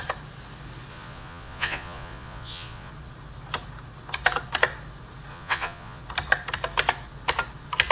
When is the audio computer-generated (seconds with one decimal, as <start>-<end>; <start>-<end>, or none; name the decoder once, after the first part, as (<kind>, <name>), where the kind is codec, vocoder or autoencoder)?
0.9-2.9 (vocoder, Vocos); 5.3-6.0